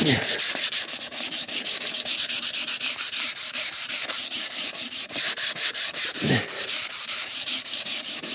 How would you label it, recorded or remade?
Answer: remade